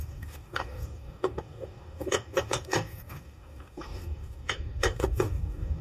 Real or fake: fake